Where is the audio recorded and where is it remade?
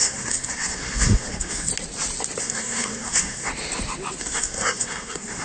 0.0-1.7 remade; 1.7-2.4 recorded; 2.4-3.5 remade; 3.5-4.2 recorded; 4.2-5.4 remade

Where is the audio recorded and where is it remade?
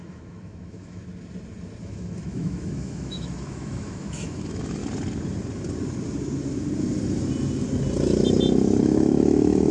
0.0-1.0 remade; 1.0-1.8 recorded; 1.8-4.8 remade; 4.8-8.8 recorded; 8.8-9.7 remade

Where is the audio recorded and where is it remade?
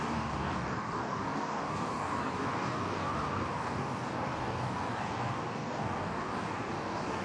0.0-7.2 remade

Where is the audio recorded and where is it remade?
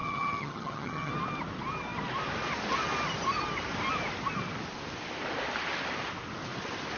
0.0-1.1 remade; 1.1-7.0 recorded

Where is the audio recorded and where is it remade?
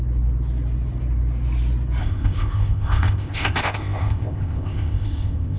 0.0-2.0 recorded; 2.0-5.6 remade